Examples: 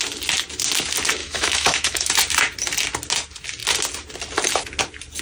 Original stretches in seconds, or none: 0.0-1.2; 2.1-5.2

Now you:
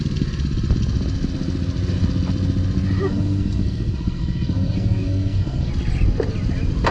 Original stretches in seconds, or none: 0.0-3.0; 5.7-6.9

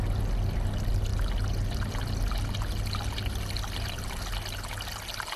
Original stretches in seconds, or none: 0.0-5.4

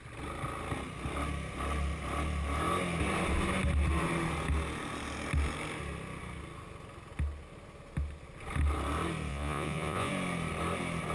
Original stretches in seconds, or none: 0.0-9.3; 10.1-11.1

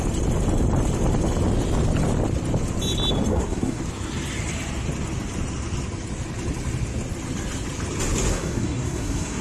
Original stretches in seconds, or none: 0.0-3.3; 3.8-8.3